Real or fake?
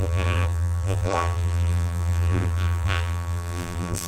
fake